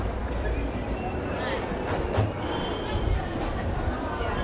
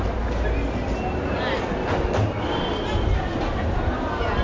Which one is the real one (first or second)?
second